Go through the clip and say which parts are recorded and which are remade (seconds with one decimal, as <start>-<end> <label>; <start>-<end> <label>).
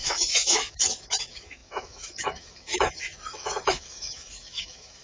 0.0-5.0 remade